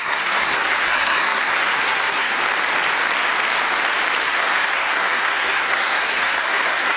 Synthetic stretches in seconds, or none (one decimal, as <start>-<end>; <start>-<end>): 0.0-2.4; 4.2-7.0